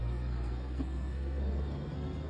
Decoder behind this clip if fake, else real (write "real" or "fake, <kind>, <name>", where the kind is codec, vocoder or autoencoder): fake, codec, SNAC